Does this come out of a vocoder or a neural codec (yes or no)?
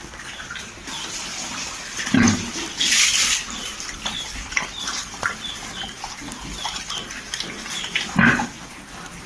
yes